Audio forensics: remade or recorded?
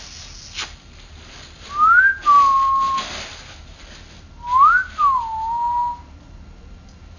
recorded